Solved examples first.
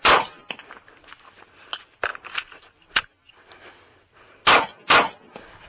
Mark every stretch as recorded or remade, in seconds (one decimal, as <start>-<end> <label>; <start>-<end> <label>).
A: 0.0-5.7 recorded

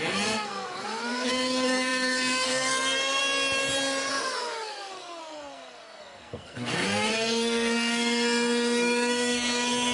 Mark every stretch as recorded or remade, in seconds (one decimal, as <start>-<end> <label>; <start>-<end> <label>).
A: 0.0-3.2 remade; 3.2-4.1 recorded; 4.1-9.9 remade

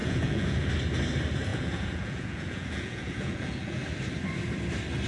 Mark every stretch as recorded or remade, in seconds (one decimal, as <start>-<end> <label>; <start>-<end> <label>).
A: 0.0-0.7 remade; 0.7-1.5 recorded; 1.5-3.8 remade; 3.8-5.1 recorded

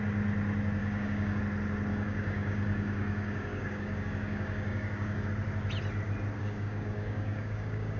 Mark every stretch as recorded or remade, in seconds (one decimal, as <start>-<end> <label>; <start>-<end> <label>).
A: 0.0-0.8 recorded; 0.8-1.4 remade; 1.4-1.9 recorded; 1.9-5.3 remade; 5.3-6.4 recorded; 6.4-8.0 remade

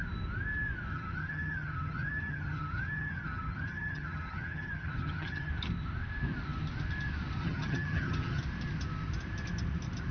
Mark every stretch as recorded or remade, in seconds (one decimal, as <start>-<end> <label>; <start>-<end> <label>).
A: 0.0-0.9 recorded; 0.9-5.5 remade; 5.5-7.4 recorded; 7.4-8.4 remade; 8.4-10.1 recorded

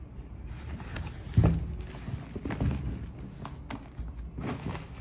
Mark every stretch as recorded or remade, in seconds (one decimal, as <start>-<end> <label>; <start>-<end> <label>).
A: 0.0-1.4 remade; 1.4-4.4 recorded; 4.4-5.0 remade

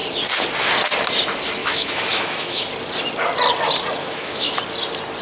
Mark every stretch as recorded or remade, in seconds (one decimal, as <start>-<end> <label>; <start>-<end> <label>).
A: 0.0-1.6 recorded; 1.6-2.7 remade; 2.7-4.0 recorded; 4.0-4.6 remade; 4.6-5.2 recorded

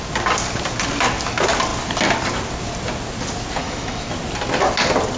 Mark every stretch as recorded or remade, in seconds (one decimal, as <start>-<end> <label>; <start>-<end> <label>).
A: 0.0-3.6 recorded; 3.6-4.1 remade; 4.1-5.2 recorded